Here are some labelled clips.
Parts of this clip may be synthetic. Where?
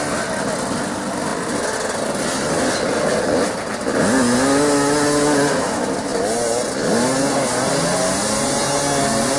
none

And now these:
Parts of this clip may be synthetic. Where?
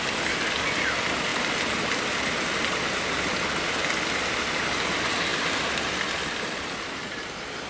none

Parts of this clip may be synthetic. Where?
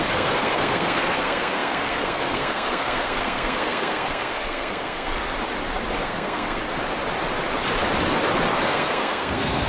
0.0-5.2 (codec, SNAC); 6.0-6.6; 8.5-9.7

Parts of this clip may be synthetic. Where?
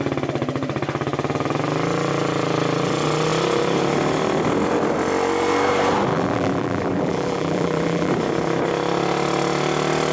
6.1-8.1 (vocoder, BigVGAN v2)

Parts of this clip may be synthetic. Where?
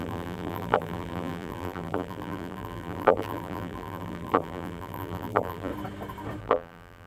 0.0-5.7 (vocoder, BigVGAN v2); 6.4-7.1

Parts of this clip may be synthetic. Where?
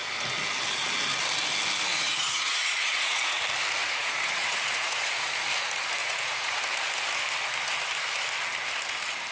1.9-3.4 (vocoder, Vocos); 3.8-5.3; 6.0-6.6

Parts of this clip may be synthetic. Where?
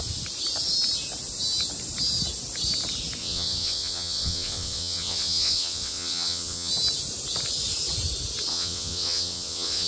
3.2-6.7 (vocoder, WaveNeXt); 8.5-9.9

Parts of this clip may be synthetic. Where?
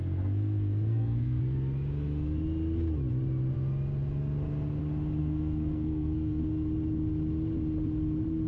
0.0-1.4 (codec, SNAC); 5.2-6.4